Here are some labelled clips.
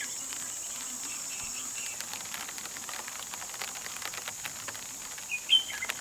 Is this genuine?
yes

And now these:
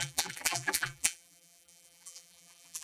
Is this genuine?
no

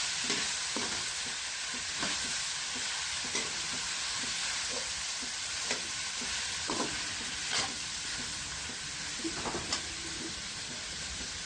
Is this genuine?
no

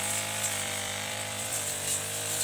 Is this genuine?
no